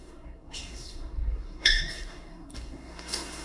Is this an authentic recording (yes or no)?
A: no